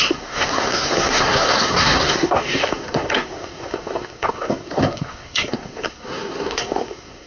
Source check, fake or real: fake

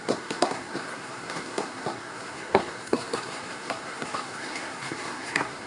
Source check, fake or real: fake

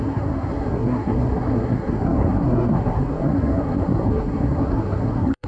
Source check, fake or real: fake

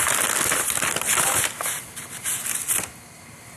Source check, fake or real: real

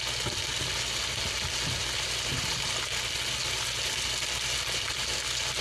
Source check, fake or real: real